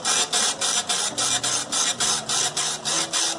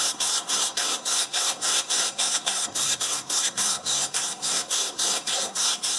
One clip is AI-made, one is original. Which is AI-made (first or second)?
second